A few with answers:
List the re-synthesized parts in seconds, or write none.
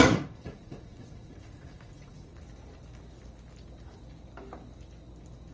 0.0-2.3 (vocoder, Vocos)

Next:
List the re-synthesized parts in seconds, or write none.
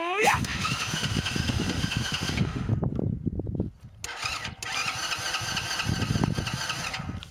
0.0-2.7 (autoencoder, DAC-VAE)